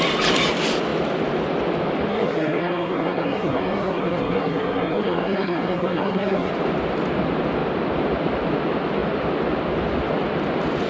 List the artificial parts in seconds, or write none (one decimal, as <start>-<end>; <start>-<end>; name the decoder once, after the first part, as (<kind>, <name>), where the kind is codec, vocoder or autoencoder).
2.1-6.5 (codec, SNAC)